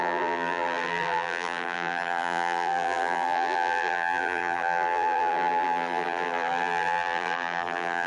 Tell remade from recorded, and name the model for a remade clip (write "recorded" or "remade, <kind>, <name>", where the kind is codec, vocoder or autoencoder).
remade, vocoder, BigVGAN v2